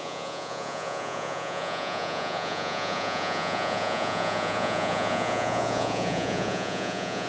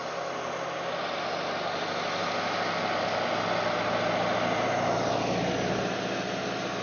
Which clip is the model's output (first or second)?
first